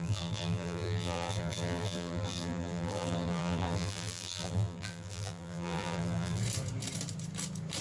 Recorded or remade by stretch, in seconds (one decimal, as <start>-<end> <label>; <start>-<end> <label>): 0.0-6.4 remade; 6.4-7.8 recorded